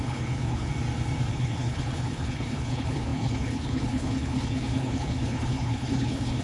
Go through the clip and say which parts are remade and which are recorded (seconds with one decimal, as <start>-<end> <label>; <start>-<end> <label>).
0.0-0.7 remade; 0.7-1.3 recorded; 1.3-6.4 remade